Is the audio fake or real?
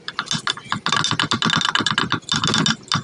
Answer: real